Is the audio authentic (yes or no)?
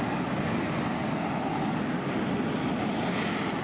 yes